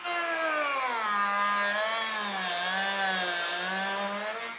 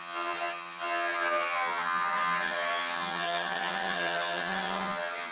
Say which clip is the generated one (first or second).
second